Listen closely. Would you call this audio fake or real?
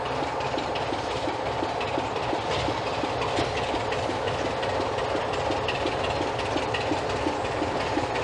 real